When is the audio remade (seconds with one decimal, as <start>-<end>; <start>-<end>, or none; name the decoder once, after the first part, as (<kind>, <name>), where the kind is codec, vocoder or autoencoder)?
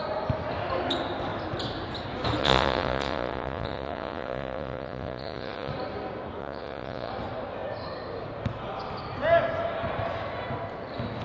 2.4-5.7 (vocoder, Vocos); 6.4-7.1